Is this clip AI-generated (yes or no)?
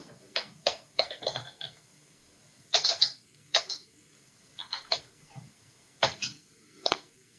yes